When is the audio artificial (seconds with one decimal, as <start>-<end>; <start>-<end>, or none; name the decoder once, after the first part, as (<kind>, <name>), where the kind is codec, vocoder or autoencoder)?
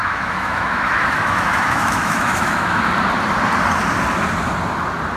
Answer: 0.0-2.8 (autoencoder, DAC-VAE)